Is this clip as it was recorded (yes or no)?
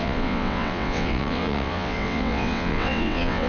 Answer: no